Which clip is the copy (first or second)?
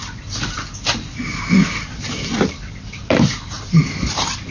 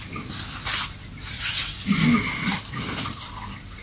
first